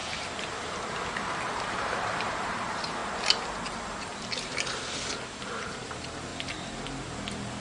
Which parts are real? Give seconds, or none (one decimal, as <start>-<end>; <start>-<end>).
0.0-1.1; 3.0-5.5; 6.3-7.6